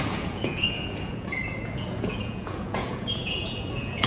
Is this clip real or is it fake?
fake